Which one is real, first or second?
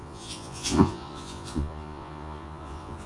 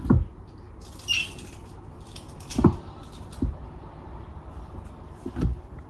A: second